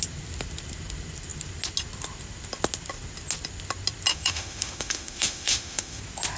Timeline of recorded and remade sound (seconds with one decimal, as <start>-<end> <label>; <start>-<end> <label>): 0.0-4.1 recorded; 4.1-6.0 remade; 6.0-6.4 recorded